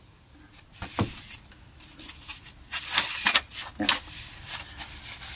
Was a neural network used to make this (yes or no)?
no